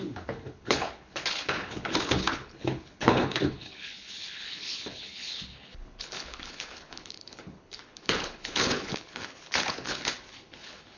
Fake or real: fake